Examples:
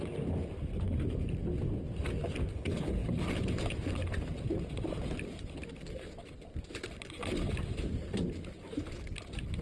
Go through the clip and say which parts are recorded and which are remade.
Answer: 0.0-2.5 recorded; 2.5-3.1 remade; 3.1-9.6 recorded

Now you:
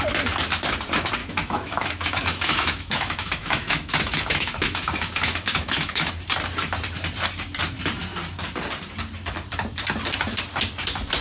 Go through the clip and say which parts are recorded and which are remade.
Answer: 0.0-1.2 recorded; 1.2-6.1 remade; 6.1-11.2 recorded

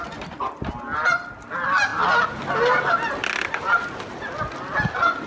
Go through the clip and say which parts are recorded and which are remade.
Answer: 0.0-5.3 recorded

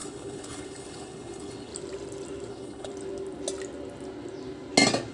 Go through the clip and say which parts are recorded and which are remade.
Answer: 0.0-1.7 remade; 1.7-2.5 recorded; 2.5-2.9 remade; 2.9-5.1 recorded

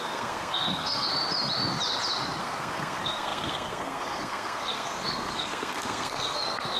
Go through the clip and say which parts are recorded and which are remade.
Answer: 0.0-1.1 remade; 1.1-2.4 recorded; 2.4-6.8 remade